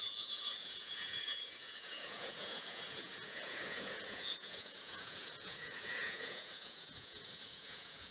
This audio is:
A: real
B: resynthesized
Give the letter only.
B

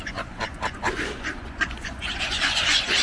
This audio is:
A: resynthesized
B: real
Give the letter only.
A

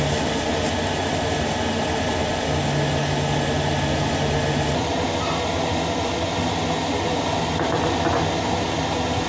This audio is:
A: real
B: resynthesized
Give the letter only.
A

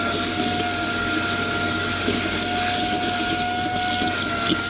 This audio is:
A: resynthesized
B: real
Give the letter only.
B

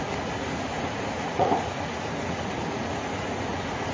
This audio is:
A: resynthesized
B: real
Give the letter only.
A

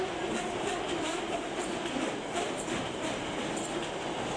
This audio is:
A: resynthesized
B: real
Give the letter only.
B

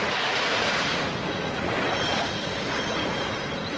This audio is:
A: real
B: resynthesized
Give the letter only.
B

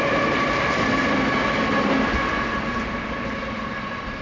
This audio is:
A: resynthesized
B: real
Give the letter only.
B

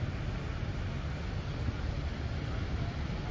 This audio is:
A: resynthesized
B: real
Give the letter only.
B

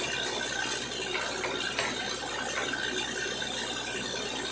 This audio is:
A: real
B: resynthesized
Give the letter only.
A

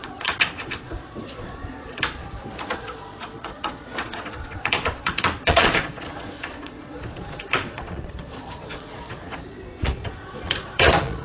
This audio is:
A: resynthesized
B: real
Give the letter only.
A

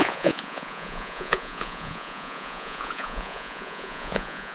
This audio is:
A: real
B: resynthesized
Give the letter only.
B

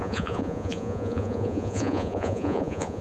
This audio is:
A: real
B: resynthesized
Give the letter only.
B